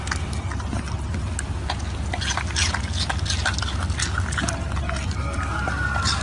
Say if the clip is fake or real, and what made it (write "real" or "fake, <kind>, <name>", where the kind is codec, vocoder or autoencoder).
real